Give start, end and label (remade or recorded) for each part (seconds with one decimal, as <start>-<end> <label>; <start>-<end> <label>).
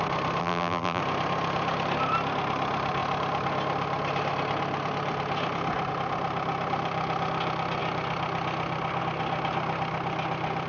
0.0-0.4 recorded; 0.4-1.0 remade; 1.0-10.7 recorded